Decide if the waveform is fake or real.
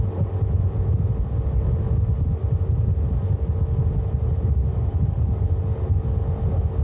real